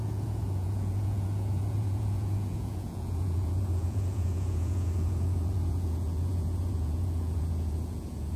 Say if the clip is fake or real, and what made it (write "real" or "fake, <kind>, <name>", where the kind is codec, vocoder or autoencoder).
fake, vocoder, Vocos